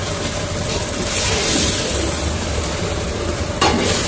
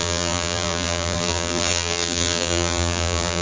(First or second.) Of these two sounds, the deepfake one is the second